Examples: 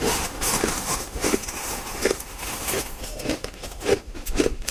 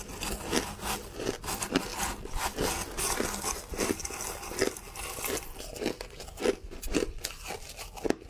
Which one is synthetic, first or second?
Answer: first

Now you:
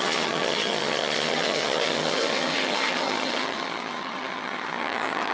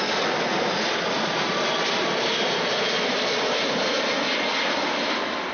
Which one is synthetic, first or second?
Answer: first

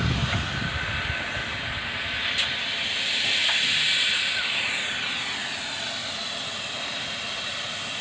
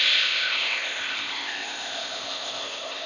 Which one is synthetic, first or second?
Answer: second